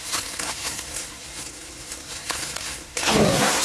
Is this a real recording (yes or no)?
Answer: no